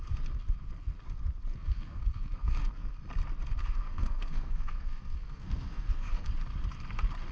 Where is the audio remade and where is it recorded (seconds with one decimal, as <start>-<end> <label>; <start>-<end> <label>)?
0.0-1.5 recorded; 1.5-3.0 remade; 3.0-3.6 recorded; 3.6-6.3 remade; 6.3-7.3 recorded